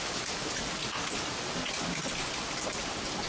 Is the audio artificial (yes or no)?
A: no